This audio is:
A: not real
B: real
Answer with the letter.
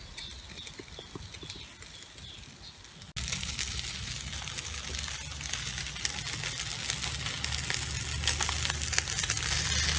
B